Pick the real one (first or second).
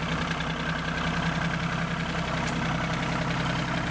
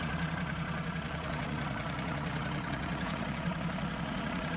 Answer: first